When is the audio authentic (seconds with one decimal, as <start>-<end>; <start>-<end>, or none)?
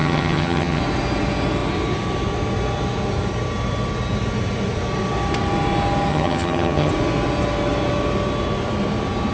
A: 0.8-6.1; 6.9-9.3